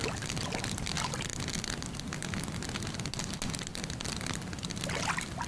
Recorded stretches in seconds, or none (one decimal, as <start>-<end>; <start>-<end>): 0.0-5.5